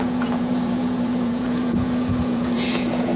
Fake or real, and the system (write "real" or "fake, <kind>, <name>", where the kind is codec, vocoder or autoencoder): fake, vocoder, Vocos